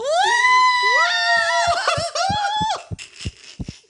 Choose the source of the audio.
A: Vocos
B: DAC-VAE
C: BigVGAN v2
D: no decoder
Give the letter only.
D